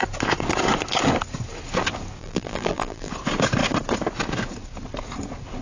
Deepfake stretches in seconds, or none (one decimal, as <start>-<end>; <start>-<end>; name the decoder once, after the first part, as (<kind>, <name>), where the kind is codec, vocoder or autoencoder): 2.2-3.1 (vocoder, BigVGAN v2)